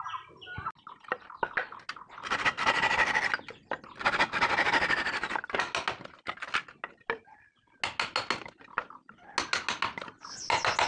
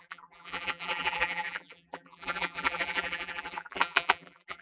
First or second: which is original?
first